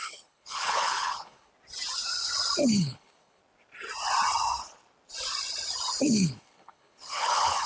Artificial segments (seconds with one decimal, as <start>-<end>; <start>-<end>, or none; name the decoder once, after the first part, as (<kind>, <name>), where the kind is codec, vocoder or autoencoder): 0.0-1.5 (codec, HILCodec); 2.6-3.4; 6.0-7.7